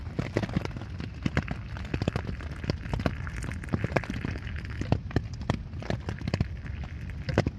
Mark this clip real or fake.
real